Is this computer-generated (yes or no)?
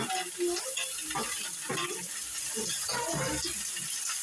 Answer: no